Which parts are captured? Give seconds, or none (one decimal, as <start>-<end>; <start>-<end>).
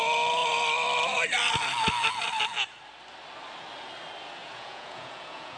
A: 0.0-4.4